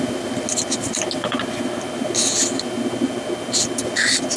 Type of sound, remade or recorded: recorded